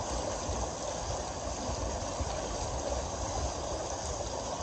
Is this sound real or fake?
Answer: real